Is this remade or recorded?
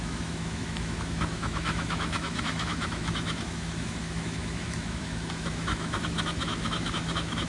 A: remade